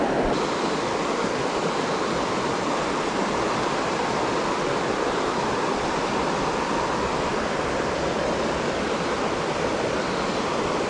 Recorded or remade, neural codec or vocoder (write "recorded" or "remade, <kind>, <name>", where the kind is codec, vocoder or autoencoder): recorded